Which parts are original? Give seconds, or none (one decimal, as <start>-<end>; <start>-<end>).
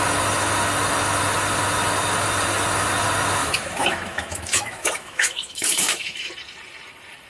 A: 0.0-3.4; 6.3-7.3